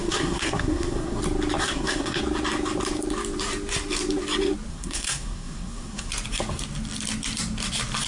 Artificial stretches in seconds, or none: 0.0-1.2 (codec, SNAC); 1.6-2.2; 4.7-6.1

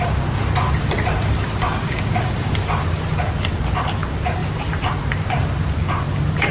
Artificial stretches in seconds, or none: 1.8-2.5 (codec, DAC)